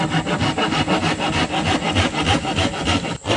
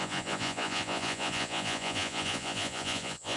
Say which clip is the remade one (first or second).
second